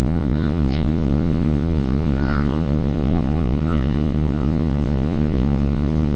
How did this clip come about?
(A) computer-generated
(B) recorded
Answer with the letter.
A